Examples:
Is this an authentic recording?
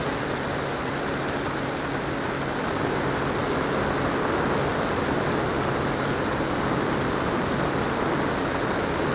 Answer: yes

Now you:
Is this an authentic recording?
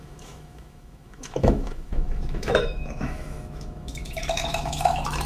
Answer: no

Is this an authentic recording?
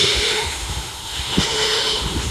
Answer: no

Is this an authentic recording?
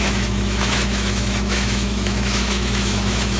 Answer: no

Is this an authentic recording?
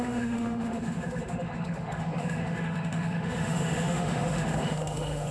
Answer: no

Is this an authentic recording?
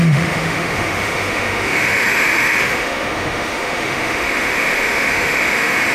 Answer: no